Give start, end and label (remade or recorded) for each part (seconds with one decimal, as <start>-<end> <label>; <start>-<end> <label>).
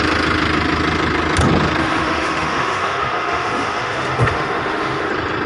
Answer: 0.0-1.8 recorded; 1.8-5.1 remade; 5.1-5.5 recorded